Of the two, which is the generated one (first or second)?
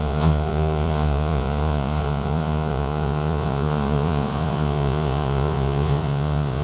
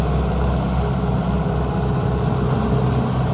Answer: first